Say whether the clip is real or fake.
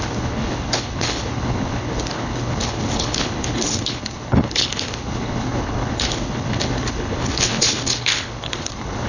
fake